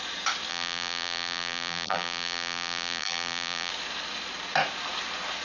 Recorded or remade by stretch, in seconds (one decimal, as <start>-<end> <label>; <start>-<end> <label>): 0.0-0.5 recorded; 0.5-3.7 remade; 3.7-5.4 recorded